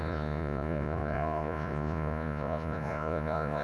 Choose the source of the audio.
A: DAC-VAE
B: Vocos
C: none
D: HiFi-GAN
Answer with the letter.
B